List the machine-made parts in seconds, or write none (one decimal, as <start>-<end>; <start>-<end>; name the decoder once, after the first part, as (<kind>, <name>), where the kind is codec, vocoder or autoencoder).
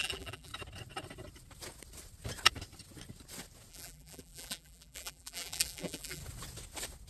0.0-0.5 (vocoder, BigVGAN v2); 3.7-6.2